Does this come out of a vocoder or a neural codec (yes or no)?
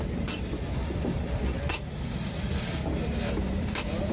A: no